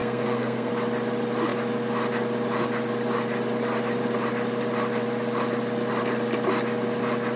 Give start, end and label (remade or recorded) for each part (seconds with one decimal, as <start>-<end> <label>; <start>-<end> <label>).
0.0-0.7 remade; 0.7-7.4 recorded